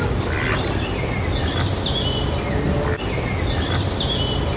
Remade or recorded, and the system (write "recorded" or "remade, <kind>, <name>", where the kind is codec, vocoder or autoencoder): recorded